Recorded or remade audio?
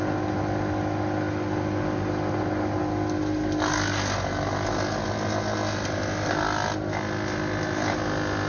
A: recorded